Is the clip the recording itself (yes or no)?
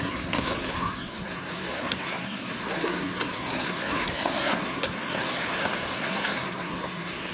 no